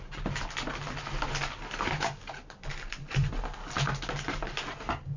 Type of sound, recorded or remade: recorded